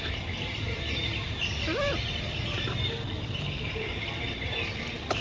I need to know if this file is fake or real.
real